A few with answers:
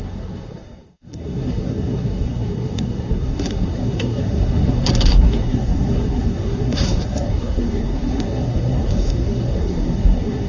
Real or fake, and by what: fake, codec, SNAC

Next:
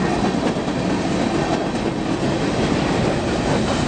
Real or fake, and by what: real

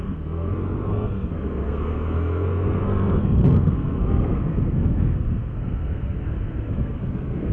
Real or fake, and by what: fake, codec, SNAC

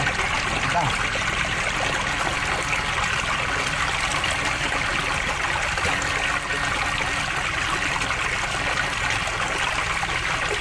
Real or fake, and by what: real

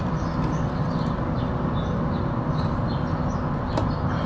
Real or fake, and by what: real